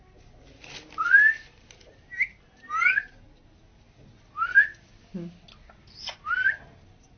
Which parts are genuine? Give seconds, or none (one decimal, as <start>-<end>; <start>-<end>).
0.0-7.2